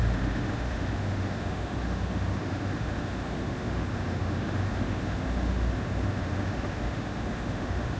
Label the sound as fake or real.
fake